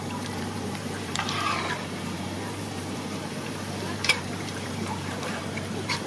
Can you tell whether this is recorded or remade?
remade